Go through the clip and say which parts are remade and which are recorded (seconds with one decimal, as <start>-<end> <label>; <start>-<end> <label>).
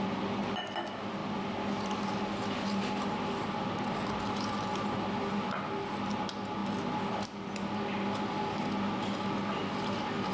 0.0-10.3 recorded